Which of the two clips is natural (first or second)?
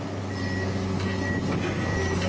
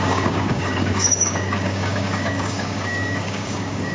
first